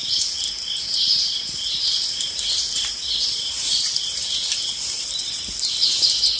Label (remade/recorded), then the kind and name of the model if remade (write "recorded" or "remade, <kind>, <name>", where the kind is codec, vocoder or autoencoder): remade, vocoder, BigVGAN v2